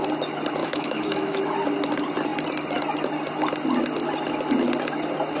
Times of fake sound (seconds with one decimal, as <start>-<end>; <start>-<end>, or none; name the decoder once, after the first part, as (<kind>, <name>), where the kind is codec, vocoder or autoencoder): 0.6-1.4 (autoencoder, DAC-VAE)